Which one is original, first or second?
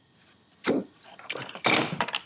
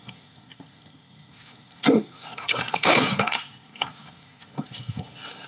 first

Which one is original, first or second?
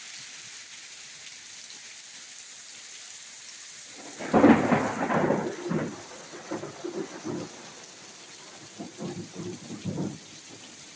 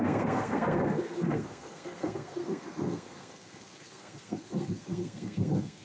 first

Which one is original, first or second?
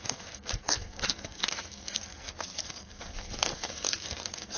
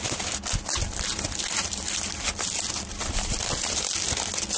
second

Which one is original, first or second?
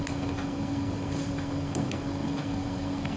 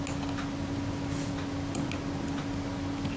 second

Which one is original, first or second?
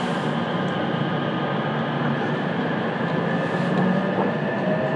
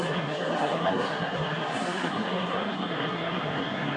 first